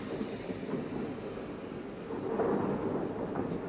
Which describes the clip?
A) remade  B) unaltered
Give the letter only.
B